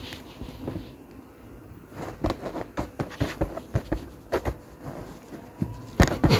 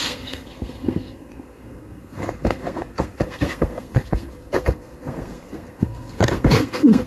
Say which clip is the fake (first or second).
second